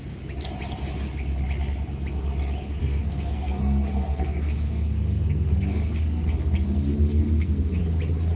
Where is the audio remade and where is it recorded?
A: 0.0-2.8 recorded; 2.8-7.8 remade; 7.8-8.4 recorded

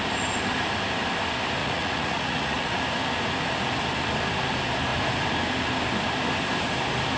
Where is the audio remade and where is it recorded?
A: 0.0-1.6 recorded; 1.6-2.8 remade; 2.8-7.2 recorded

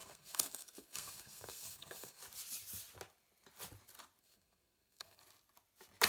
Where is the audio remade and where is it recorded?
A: 0.0-2.2 remade; 2.2-4.2 recorded; 4.2-5.2 remade; 5.2-6.1 recorded

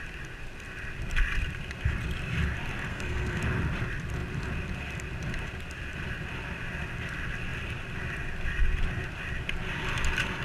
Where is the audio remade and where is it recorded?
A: 0.0-2.9 recorded; 2.9-3.4 remade; 3.4-10.4 recorded

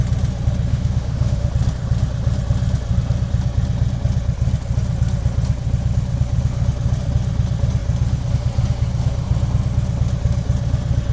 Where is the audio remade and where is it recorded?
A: 0.0-0.7 recorded; 0.7-1.5 remade; 1.5-11.1 recorded

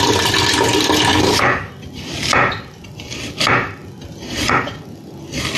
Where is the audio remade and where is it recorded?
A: 0.0-1.1 recorded; 1.1-1.7 remade; 1.7-5.6 recorded

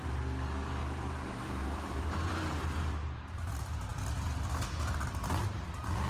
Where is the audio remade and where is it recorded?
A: 0.0-0.8 recorded; 0.8-3.5 remade; 3.5-6.1 recorded